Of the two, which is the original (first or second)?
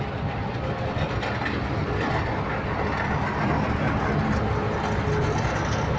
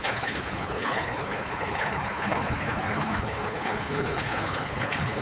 first